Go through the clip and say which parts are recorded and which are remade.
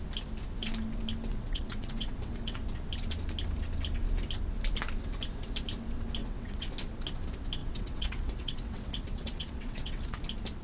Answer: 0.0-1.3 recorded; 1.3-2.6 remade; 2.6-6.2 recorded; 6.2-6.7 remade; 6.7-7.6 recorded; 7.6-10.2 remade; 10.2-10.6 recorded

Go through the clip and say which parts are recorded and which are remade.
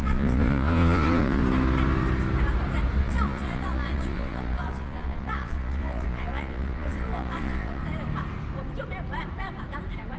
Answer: 0.0-1.4 remade; 1.4-3.0 recorded; 3.0-7.8 remade; 7.8-10.2 recorded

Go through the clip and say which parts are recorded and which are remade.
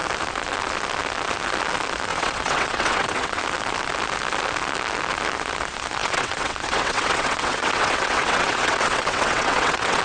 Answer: 0.0-2.1 recorded; 2.1-3.4 remade; 3.4-6.0 recorded; 6.0-10.0 remade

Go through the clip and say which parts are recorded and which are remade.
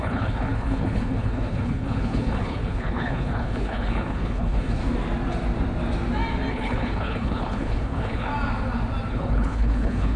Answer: 0.0-4.8 remade; 4.8-6.5 recorded; 6.5-8.3 remade; 8.3-9.1 recorded; 9.1-10.2 remade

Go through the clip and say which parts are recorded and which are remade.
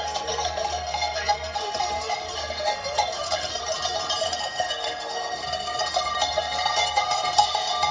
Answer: 0.0-3.6 remade; 3.6-4.2 recorded; 4.2-7.9 remade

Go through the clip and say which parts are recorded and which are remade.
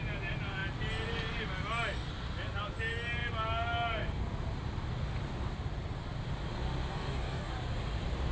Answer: 0.0-6.9 recorded; 6.9-7.5 remade; 7.5-8.3 recorded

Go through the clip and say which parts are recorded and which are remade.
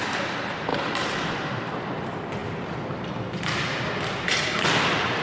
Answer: 0.0-0.7 recorded; 0.7-1.7 remade; 1.7-5.2 recorded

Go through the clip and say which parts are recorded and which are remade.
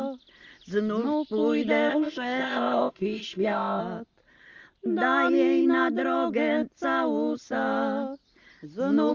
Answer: 0.0-1.9 recorded; 1.9-3.8 remade; 3.8-9.1 recorded